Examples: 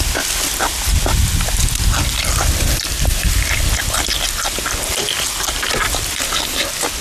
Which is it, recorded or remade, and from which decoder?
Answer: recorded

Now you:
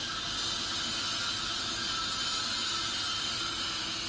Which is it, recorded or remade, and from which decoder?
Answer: recorded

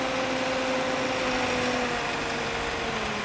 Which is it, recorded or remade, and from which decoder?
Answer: recorded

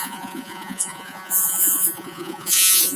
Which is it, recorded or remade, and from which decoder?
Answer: remade, vocoder, Vocos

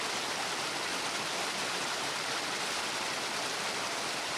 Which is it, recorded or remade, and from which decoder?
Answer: recorded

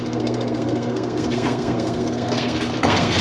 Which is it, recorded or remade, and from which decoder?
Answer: remade, codec, SNAC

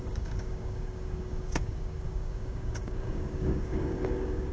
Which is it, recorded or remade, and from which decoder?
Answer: remade, codec, DAC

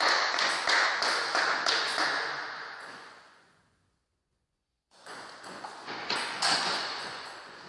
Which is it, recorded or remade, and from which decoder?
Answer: remade, vocoder, Vocos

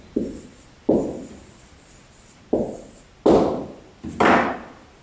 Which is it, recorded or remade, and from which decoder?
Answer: recorded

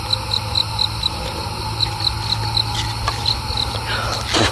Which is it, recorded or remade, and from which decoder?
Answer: recorded